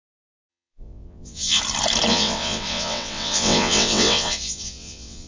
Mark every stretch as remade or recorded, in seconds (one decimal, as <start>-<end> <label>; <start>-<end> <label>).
0.0-0.5 recorded; 0.5-1.6 remade; 1.6-2.1 recorded; 2.1-5.3 remade

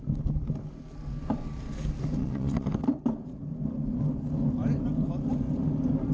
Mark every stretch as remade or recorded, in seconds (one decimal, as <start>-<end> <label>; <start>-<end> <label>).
0.0-2.2 recorded; 2.2-2.7 remade; 2.7-6.1 recorded